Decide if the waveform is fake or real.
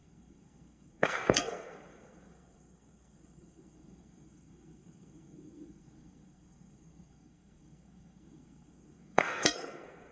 fake